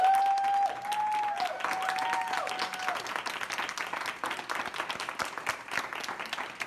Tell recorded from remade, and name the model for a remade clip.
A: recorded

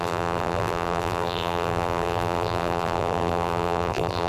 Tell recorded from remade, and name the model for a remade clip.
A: remade, vocoder, BigVGAN v2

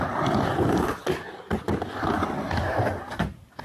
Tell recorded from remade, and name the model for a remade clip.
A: recorded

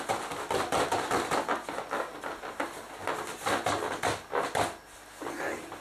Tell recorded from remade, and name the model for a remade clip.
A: recorded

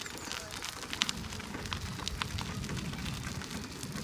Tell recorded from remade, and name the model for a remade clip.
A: recorded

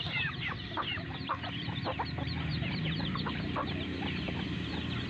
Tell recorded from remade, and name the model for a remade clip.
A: remade, vocoder, BigVGAN v2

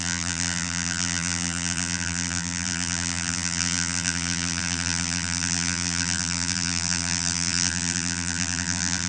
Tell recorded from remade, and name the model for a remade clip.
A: remade, vocoder, BigVGAN v2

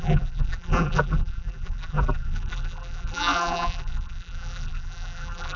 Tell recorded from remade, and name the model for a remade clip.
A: remade, vocoder, BigVGAN v2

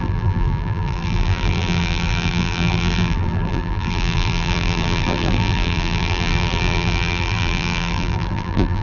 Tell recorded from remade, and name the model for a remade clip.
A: remade, vocoder, BigVGAN v2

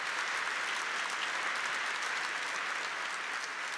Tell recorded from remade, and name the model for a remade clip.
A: remade, vocoder, BigVGAN v2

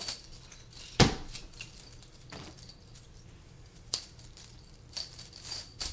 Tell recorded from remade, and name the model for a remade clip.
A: remade, vocoder, BigVGAN v2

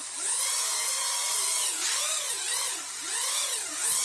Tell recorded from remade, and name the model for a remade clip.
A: recorded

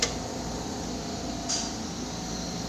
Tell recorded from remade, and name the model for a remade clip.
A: recorded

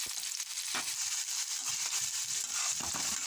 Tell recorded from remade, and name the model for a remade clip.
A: recorded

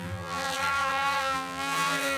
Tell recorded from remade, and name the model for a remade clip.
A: remade, vocoder, BigVGAN v2